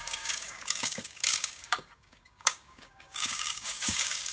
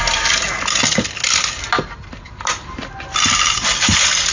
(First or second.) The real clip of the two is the second